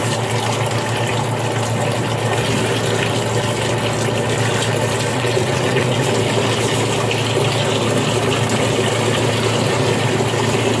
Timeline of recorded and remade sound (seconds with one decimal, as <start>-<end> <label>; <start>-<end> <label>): 0.0-5.1 recorded; 5.1-6.1 remade; 6.1-10.8 recorded